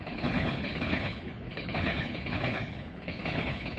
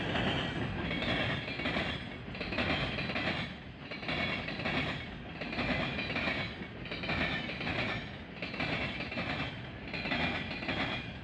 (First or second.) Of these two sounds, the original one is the second